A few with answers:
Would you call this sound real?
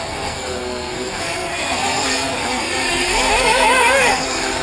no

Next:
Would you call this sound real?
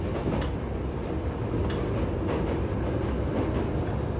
yes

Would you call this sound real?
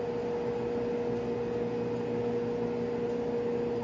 yes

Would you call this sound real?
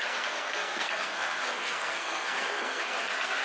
no